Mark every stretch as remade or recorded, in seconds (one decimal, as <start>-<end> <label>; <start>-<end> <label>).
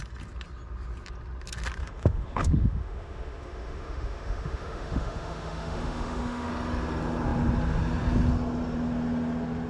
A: 0.0-1.8 recorded; 1.8-6.5 remade; 6.5-9.7 recorded